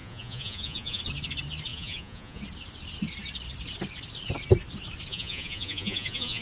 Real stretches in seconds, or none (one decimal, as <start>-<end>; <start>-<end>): 1.0-1.7; 2.4-5.1